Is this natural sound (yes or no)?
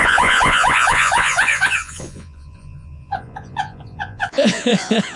no